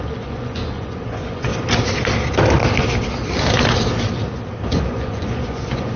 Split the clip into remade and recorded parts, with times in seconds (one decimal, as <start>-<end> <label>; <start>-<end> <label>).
0.0-1.5 remade; 1.5-4.7 recorded; 4.7-6.0 remade